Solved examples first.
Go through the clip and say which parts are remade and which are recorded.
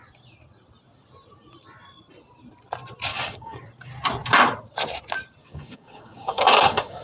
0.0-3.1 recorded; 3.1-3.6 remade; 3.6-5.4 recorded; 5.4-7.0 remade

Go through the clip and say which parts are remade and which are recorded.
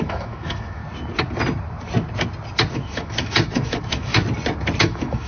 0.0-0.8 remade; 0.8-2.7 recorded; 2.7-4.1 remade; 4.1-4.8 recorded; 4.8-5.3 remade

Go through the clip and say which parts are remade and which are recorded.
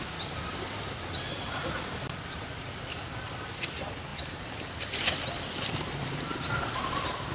0.0-7.3 remade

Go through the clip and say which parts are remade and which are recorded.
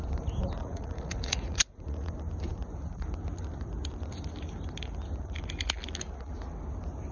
0.0-0.6 recorded; 0.6-2.1 remade; 2.1-7.1 recorded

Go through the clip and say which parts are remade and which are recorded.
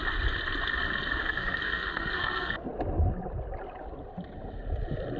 0.0-1.2 recorded; 1.2-2.7 remade; 2.7-5.2 recorded